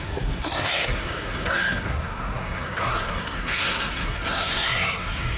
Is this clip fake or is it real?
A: fake